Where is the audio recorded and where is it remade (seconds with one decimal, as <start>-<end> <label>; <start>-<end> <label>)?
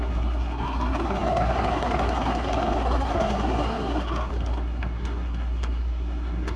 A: 0.0-6.6 remade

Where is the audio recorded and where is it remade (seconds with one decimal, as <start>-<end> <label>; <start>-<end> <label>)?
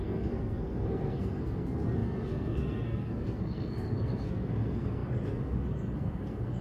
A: 0.0-6.6 remade